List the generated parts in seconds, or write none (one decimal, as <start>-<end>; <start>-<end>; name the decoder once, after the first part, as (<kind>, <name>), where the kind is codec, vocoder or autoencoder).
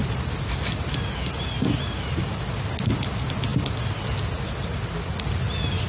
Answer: none